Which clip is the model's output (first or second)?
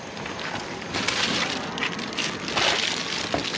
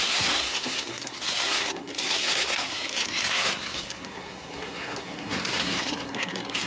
second